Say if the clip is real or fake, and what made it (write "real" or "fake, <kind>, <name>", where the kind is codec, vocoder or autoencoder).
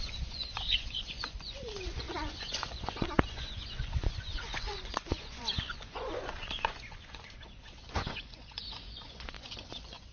fake, vocoder, Vocos